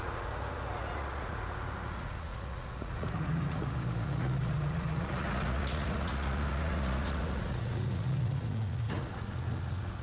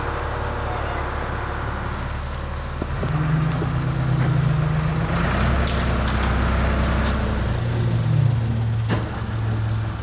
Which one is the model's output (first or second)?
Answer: first